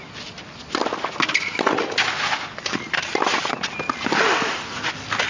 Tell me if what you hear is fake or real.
real